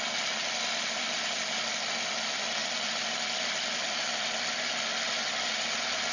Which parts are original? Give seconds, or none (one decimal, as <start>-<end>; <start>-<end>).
0.0-6.1